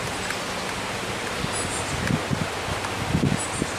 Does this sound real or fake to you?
real